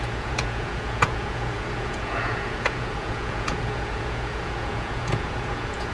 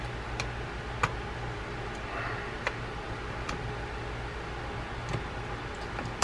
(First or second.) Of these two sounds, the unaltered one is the second